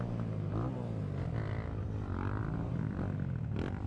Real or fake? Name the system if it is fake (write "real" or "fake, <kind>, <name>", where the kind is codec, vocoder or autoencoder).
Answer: real